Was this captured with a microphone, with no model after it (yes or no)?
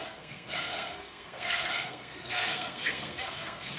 no